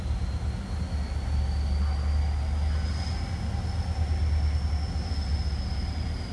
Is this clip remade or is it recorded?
recorded